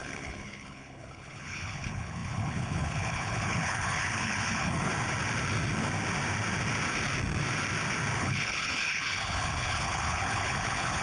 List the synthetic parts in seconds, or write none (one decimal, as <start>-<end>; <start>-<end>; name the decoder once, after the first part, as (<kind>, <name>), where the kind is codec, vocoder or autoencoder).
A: 0.0-4.9 (codec, HILCodec); 8.2-11.0